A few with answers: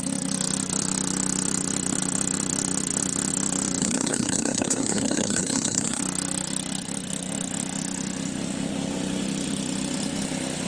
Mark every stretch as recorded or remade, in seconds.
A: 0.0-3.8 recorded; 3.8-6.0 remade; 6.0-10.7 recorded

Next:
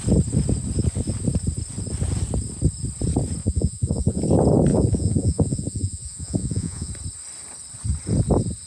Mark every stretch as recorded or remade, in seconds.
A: 0.0-3.4 recorded; 3.4-4.2 remade; 4.2-4.7 recorded; 4.7-6.9 remade; 6.9-8.7 recorded

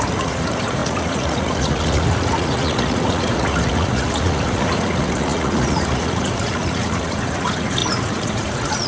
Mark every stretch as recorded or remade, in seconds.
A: 0.0-8.9 remade

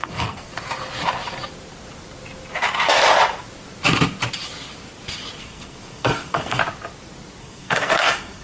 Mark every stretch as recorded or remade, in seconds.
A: 0.0-0.5 remade; 0.5-5.4 recorded; 5.4-6.6 remade; 6.6-7.4 recorded; 7.4-8.4 remade

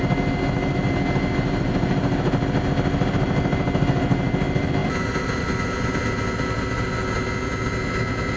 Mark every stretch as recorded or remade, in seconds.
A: 0.0-8.4 recorded